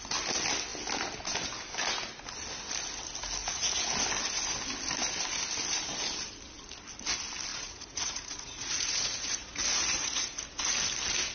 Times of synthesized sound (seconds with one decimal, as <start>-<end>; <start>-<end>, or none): 3.4-3.9; 7.5-10.4